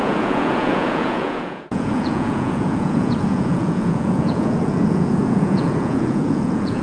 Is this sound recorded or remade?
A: remade